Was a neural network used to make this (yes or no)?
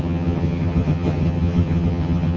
yes